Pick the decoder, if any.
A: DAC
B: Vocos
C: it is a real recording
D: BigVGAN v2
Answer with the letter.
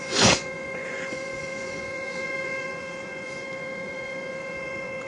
B